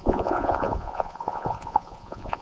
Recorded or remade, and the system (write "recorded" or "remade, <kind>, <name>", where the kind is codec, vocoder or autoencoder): remade, vocoder, Vocos